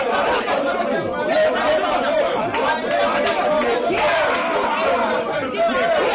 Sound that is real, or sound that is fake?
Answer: real